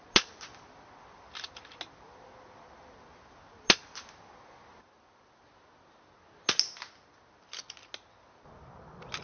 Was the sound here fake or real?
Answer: real